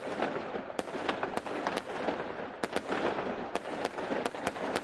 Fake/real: real